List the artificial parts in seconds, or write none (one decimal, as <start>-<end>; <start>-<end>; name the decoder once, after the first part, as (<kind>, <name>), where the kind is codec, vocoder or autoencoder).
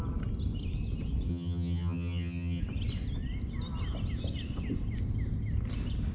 1.3-2.6 (vocoder, HiFi-GAN)